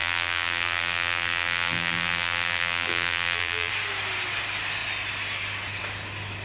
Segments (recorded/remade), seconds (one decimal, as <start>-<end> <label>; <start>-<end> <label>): 0.0-3.7 remade; 3.7-6.4 recorded